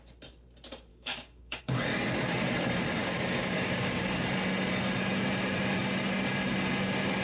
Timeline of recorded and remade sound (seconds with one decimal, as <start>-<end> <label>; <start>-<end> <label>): 0.0-0.9 recorded; 0.9-1.6 remade; 1.6-3.0 recorded; 3.0-4.2 remade; 4.2-7.2 recorded